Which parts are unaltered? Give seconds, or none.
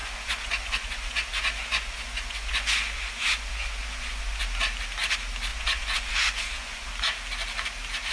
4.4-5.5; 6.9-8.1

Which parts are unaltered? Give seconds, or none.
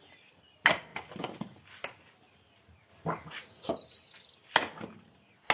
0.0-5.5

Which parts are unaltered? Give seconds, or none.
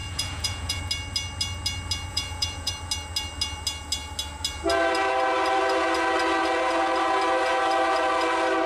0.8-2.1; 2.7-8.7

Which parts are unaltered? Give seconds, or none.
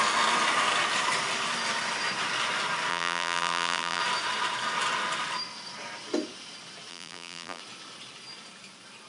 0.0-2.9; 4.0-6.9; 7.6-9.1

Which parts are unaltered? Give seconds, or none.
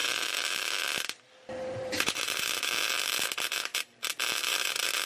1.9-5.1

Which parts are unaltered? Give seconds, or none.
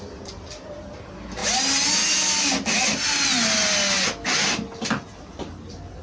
0.0-6.0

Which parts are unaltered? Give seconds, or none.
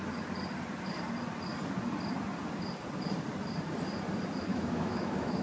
0.0-4.5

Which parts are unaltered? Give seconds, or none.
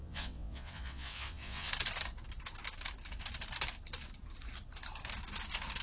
1.7-5.8